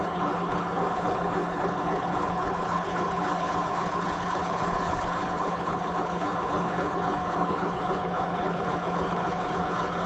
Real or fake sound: fake